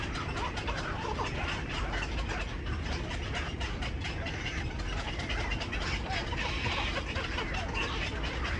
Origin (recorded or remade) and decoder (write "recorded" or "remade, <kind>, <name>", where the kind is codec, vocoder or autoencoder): recorded